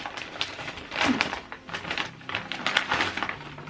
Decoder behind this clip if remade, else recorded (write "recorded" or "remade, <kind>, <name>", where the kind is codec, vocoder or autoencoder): recorded